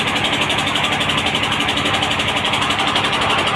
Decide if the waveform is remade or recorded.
recorded